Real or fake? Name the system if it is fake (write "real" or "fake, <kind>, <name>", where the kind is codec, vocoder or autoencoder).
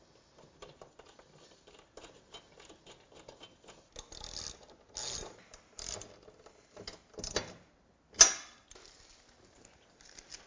real